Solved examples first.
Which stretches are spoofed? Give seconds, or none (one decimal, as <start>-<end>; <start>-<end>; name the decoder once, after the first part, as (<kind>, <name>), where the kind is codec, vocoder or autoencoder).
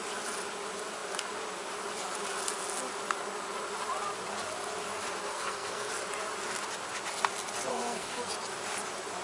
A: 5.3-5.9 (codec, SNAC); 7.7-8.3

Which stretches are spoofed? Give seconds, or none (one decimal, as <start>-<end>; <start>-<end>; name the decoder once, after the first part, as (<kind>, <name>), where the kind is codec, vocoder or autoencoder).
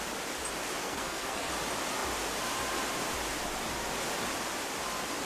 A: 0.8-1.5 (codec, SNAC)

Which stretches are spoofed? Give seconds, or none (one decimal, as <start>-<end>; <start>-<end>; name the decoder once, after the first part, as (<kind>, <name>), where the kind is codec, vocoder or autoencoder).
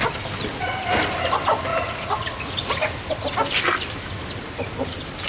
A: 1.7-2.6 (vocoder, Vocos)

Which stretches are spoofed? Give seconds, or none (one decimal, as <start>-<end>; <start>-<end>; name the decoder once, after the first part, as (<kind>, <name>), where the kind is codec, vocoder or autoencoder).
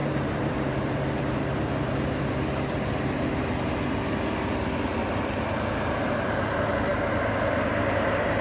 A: 0.0-3.6 (vocoder, BigVGAN v2); 5.0-6.3; 6.9-8.0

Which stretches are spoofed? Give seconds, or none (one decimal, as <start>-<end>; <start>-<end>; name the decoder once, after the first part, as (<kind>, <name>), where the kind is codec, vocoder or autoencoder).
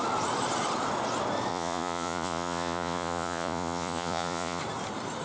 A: 1.5-4.6 (vocoder, Vocos)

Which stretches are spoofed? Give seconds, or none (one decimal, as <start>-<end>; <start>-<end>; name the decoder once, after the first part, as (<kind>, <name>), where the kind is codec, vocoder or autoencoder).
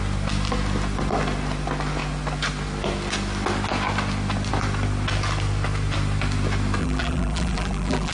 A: 6.8-8.1 (vocoder, BigVGAN v2)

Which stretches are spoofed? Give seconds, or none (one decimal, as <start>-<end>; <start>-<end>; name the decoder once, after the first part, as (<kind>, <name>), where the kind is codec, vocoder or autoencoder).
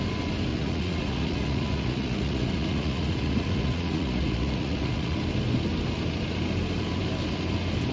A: 0.5-5.2 (vocoder, Vocos)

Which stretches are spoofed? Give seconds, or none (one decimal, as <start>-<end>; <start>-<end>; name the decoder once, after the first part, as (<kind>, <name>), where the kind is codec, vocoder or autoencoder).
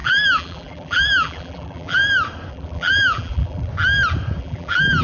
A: 0.0-2.0 (vocoder, BigVGAN v2); 2.5-3.7; 4.4-5.0